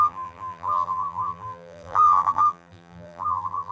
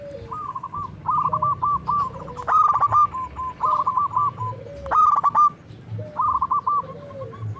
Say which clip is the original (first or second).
second